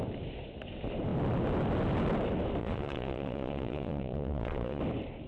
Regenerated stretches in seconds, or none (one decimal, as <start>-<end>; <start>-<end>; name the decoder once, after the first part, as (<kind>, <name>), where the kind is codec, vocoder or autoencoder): 2.6-4.8 (vocoder, Vocos)